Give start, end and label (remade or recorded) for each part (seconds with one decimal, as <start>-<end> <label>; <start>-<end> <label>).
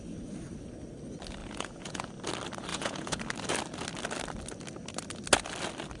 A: 0.0-1.4 recorded; 1.4-2.1 remade; 2.1-2.7 recorded; 2.7-3.2 remade; 3.2-6.0 recorded